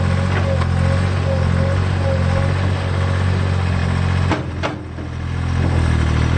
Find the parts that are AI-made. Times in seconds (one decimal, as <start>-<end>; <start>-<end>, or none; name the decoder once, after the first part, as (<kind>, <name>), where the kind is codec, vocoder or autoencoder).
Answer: none